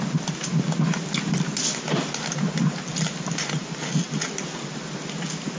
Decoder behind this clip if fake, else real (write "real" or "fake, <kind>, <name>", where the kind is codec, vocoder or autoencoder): real